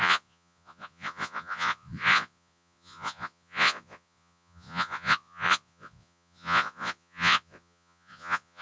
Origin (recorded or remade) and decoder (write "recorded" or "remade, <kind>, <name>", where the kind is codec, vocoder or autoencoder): remade, vocoder, Vocos